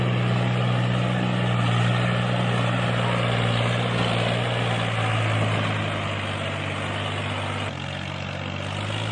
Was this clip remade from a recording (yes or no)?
no